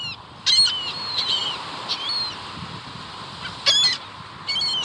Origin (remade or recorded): recorded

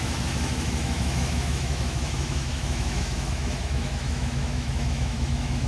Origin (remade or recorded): remade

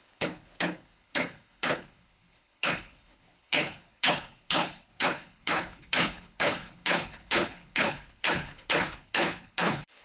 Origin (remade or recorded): remade